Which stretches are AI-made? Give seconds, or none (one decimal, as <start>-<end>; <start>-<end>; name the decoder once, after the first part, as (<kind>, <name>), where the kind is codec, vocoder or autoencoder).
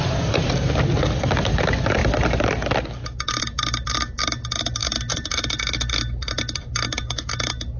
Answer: none